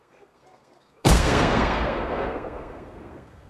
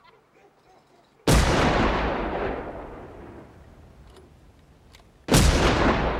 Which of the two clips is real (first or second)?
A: second